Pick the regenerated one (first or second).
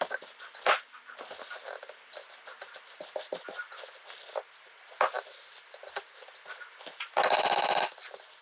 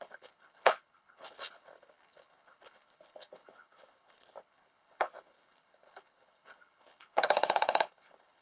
second